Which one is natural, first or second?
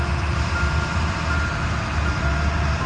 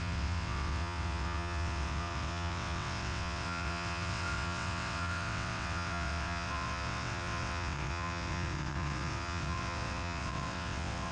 first